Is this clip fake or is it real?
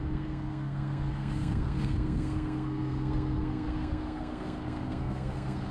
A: fake